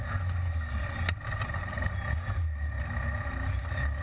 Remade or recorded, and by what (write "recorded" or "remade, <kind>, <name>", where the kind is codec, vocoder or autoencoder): recorded